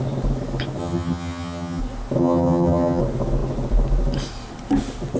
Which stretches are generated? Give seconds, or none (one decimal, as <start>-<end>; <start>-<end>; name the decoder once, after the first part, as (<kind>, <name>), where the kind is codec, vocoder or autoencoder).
0.8-1.8 (vocoder, HiFi-GAN); 2.2-3.0